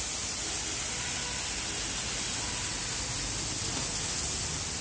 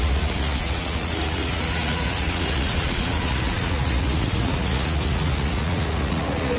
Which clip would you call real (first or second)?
first